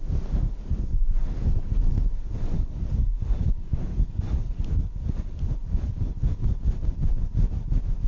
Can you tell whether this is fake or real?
real